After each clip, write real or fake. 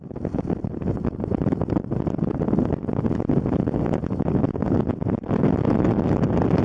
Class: real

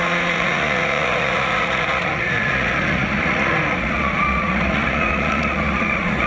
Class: fake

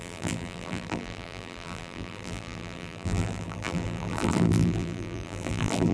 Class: fake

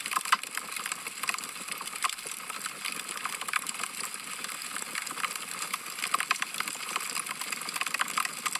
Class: real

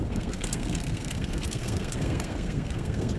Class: fake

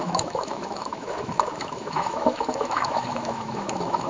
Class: fake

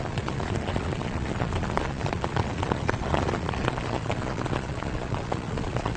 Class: fake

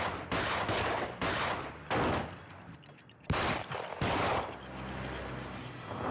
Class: real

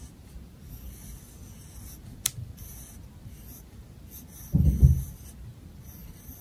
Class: real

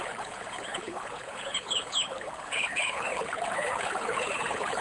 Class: fake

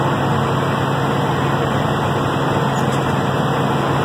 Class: real